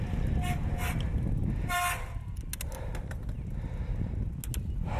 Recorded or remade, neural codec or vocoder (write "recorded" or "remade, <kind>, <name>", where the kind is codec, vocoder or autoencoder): recorded